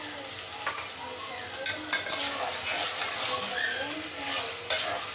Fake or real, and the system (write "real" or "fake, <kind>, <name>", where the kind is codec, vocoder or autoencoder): real